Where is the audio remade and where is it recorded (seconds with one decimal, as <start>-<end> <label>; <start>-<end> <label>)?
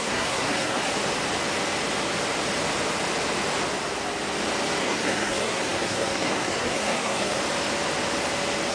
0.0-0.9 remade; 0.9-4.8 recorded; 4.8-7.4 remade; 7.4-8.7 recorded